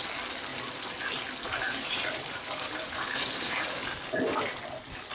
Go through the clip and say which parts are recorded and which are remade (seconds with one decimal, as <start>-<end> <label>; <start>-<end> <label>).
0.0-0.5 recorded; 0.5-3.6 remade; 3.6-5.1 recorded